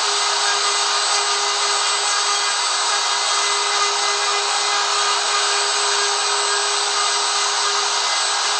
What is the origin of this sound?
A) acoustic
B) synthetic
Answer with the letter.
A